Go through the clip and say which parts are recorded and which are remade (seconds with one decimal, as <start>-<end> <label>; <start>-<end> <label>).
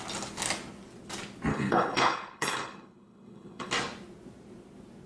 0.0-1.5 recorded; 1.5-3.7 remade; 3.7-5.1 recorded